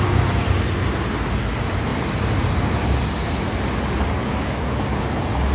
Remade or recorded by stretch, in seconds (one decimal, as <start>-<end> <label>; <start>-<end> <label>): 0.0-5.5 recorded